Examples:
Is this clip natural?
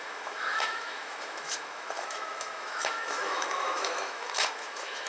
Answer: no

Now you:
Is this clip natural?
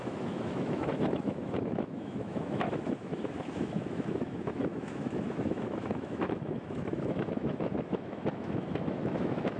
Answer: no